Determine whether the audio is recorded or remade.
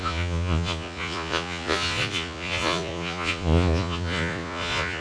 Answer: remade